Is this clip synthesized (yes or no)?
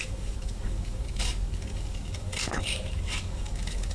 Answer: yes